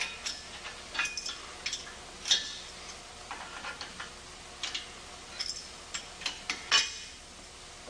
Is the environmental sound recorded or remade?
recorded